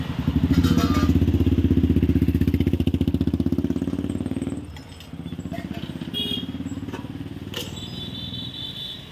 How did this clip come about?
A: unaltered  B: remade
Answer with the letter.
A